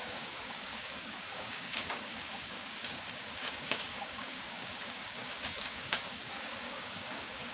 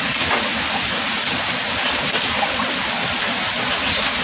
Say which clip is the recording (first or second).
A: second